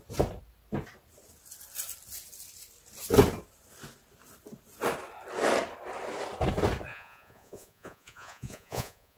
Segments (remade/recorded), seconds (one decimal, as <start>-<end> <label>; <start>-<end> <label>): 0.0-6.9 recorded; 6.9-9.2 remade